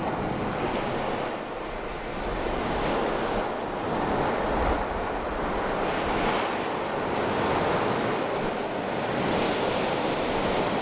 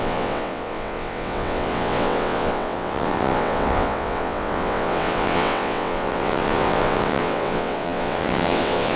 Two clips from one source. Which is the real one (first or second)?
first